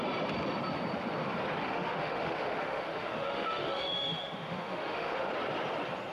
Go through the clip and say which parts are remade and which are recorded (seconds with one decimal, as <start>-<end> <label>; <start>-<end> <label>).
0.0-1.6 recorded; 1.6-5.3 remade; 5.3-6.1 recorded